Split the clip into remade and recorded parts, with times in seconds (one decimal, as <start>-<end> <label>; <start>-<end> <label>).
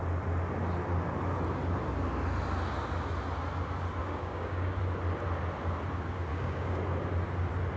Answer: 0.0-4.0 recorded; 4.0-4.8 remade; 4.8-6.3 recorded; 6.3-6.8 remade; 6.8-7.8 recorded